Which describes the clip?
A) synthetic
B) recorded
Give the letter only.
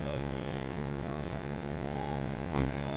A